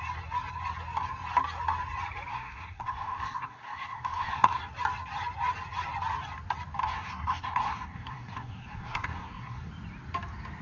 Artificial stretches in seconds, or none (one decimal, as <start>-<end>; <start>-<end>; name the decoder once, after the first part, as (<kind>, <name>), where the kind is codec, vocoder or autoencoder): 2.3-4.6 (codec, SNAC); 6.8-9.7